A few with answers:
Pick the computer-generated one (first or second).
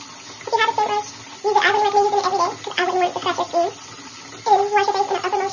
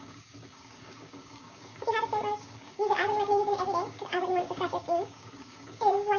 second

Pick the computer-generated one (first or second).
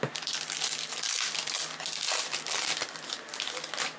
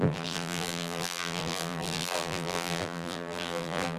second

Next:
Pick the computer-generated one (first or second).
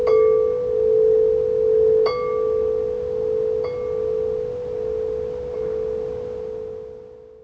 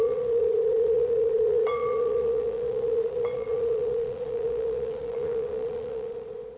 second